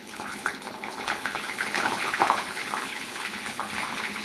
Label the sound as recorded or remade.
remade